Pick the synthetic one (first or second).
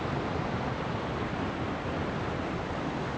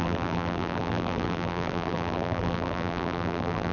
second